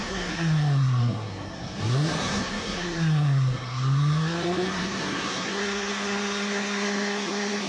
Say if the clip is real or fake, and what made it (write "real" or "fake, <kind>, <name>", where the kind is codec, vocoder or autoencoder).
fake, codec, SNAC